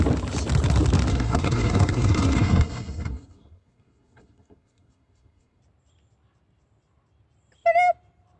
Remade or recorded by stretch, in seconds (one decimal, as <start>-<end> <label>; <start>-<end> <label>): 0.0-1.1 recorded; 1.1-5.6 remade; 5.6-8.4 recorded